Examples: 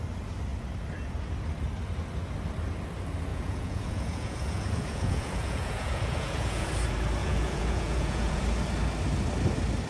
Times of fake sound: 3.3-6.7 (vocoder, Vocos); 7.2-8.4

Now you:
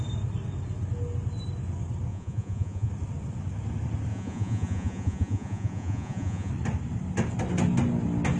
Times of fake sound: 2.1-2.9 (vocoder, Vocos); 4.1-6.5